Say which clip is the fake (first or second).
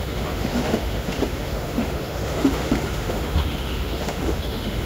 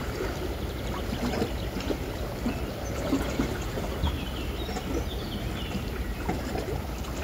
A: first